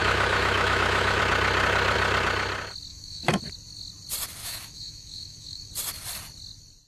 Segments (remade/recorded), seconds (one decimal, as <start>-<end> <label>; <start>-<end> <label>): 0.0-1.2 remade; 1.2-2.9 recorded; 2.9-3.4 remade; 3.4-4.4 recorded; 4.4-5.7 remade; 5.7-6.9 recorded